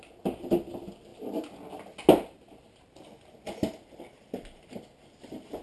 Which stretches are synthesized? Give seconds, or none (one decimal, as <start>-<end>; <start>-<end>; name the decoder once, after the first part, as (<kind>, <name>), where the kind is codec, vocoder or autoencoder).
none